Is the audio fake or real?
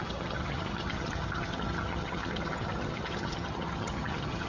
fake